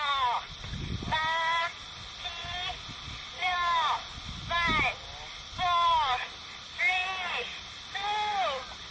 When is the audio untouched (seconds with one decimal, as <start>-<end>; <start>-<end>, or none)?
0.0-8.9